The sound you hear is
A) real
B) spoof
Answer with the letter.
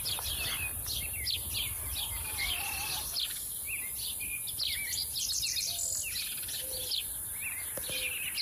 A